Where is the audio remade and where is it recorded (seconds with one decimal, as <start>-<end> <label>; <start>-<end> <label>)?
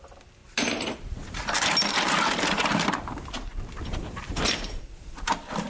0.0-5.7 recorded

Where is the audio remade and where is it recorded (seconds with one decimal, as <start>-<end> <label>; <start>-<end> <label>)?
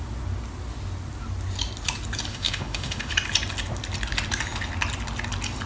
0.0-2.3 recorded; 2.3-3.1 remade; 3.1-5.7 recorded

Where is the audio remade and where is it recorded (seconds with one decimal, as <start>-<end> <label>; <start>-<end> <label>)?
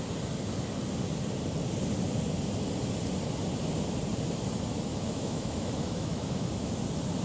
0.0-4.9 recorded; 4.9-6.7 remade; 6.7-7.2 recorded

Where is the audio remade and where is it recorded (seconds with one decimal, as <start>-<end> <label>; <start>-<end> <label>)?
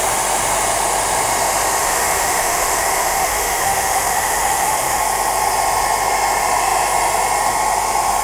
0.0-1.8 recorded; 1.8-5.0 remade; 5.0-8.2 recorded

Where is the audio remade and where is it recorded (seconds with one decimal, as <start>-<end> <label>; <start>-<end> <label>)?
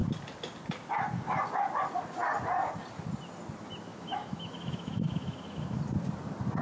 0.0-3.9 recorded; 3.9-5.8 remade; 5.8-6.6 recorded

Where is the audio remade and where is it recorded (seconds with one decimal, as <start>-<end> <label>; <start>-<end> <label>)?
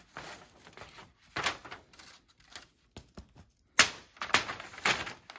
0.0-5.4 recorded